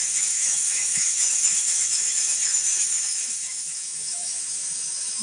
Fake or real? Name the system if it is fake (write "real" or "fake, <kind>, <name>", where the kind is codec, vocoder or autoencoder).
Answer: fake, autoencoder, DAC-VAE